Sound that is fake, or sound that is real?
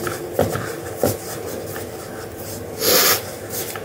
real